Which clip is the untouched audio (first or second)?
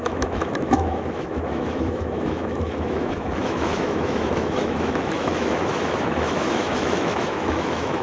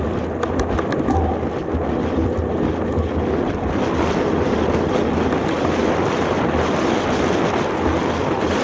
second